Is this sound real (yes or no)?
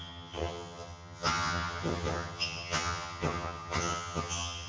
no